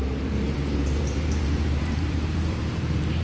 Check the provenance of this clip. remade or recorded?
remade